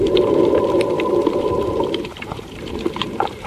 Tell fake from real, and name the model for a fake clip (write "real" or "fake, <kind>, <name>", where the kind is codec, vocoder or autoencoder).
fake, vocoder, BigVGAN v2